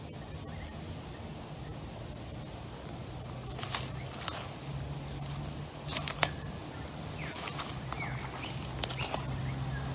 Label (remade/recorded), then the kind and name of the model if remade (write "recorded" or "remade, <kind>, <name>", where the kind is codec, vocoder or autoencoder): recorded